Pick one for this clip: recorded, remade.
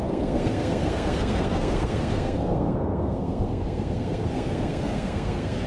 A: remade